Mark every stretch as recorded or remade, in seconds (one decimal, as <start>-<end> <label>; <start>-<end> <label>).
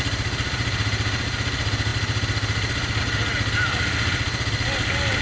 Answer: 0.0-5.2 recorded